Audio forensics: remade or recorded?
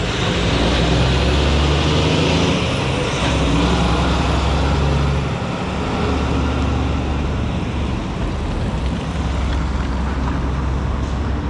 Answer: recorded